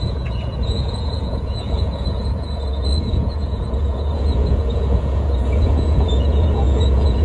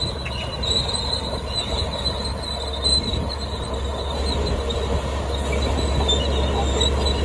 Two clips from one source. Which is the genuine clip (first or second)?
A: second